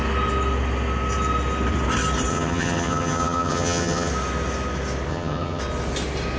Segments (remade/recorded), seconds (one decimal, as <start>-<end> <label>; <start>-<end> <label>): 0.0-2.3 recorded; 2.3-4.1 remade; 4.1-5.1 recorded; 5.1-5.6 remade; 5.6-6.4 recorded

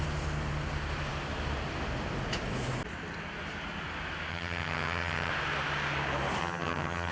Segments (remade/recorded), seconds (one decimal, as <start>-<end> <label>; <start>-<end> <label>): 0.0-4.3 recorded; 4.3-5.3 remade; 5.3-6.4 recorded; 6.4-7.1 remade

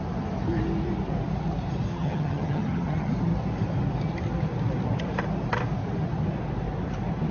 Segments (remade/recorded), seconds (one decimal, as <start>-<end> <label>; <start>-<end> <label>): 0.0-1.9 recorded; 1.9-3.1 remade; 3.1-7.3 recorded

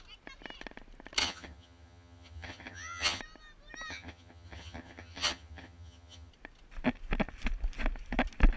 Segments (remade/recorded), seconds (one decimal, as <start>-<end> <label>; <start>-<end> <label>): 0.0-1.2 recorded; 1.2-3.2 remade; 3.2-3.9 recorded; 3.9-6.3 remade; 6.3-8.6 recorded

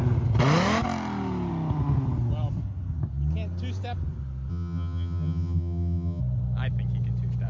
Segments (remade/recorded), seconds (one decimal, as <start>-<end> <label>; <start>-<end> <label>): 0.0-4.5 recorded; 4.5-6.2 remade; 6.2-7.5 recorded

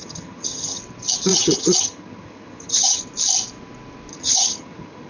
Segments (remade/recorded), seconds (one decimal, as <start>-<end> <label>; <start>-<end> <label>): 0.0-0.8 remade; 0.8-1.3 recorded; 1.3-3.0 remade; 3.0-4.1 recorded; 4.1-5.1 remade

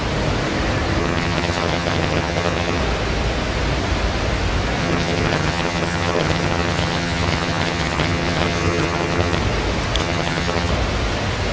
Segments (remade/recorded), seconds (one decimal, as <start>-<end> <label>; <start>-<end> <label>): 0.0-1.0 recorded; 1.0-2.8 remade; 2.8-4.8 recorded; 4.8-9.4 remade; 9.4-10.0 recorded; 10.0-10.7 remade; 10.7-11.5 recorded

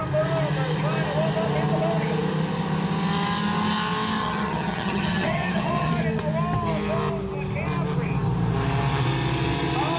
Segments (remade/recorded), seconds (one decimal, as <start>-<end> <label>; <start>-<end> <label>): 0.0-4.2 recorded; 4.2-5.9 remade; 5.9-10.0 recorded